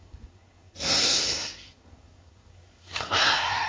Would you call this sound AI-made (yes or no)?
yes